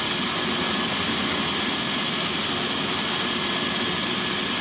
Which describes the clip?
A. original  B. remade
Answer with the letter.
A